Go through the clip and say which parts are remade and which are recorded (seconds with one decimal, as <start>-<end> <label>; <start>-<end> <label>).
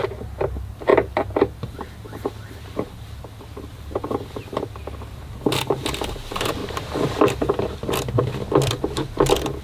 0.0-0.9 recorded; 0.9-4.3 remade; 4.3-6.6 recorded; 6.6-8.0 remade; 8.0-9.6 recorded